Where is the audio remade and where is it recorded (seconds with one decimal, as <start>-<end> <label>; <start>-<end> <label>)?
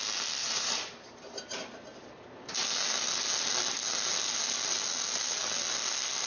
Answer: 0.0-0.4 recorded; 0.4-2.5 remade; 2.5-6.3 recorded